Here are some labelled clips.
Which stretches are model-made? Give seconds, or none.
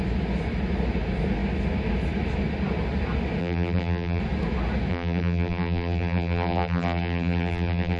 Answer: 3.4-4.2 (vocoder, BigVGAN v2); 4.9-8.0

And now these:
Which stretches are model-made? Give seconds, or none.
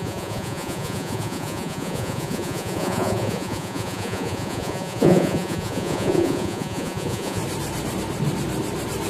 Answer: 0.0-7.4 (vocoder, Vocos)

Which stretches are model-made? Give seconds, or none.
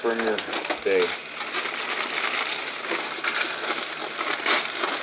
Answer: none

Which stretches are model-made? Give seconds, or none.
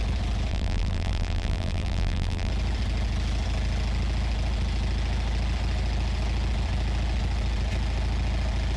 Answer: 0.5-2.5 (vocoder, BigVGAN v2)